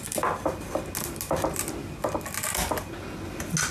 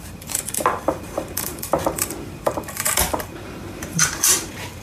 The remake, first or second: second